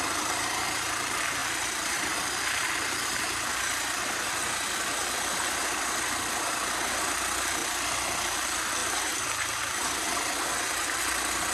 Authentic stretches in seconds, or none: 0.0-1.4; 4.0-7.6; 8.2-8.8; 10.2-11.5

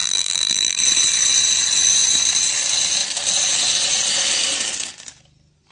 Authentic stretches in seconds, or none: 0.8-5.7

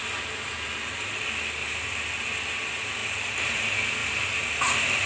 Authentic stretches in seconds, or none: 0.0-3.0; 3.6-4.0